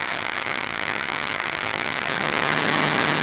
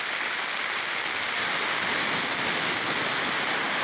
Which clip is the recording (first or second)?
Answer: second